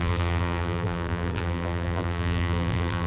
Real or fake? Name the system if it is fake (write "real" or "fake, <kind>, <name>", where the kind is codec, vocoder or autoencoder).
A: fake, vocoder, BigVGAN v2